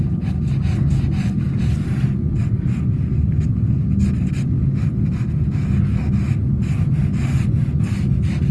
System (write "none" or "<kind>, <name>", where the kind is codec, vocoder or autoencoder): none